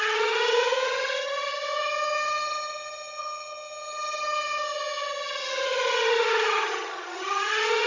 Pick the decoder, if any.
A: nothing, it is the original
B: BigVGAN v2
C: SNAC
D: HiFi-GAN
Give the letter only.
D